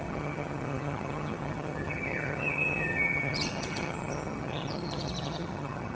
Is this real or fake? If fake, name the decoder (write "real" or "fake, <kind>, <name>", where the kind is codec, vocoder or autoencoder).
fake, vocoder, HiFi-GAN